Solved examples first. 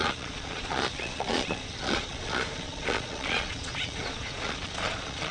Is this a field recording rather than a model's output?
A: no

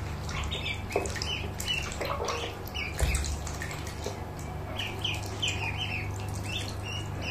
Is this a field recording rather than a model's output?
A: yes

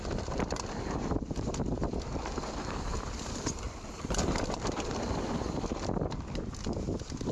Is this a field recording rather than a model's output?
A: no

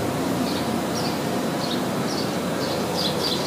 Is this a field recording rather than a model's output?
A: no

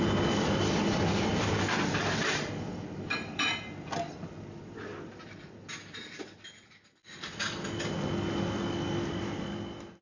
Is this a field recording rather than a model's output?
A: yes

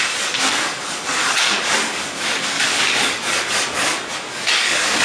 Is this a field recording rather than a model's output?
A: no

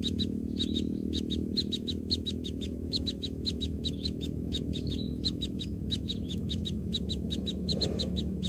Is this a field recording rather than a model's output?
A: no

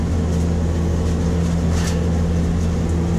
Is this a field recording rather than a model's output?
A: yes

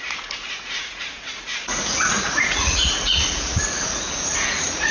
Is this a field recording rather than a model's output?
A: no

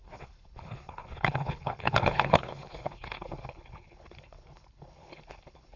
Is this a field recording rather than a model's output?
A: no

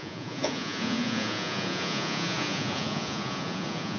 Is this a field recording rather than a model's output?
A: no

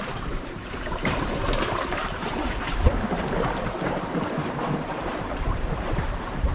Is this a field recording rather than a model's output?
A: no